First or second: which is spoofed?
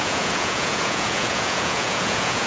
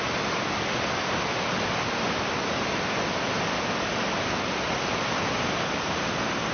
first